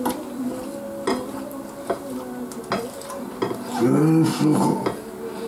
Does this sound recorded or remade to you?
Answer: recorded